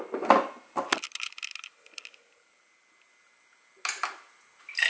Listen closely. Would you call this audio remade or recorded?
recorded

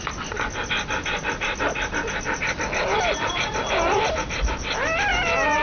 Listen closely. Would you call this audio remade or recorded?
recorded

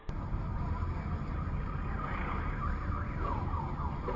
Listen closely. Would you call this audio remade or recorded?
recorded